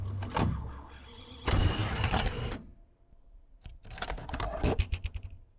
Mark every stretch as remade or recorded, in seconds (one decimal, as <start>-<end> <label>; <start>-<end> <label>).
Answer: 0.0-1.8 recorded; 1.8-5.6 remade